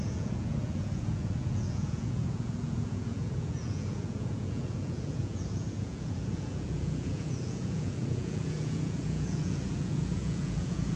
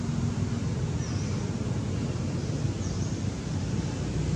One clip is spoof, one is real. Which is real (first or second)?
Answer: second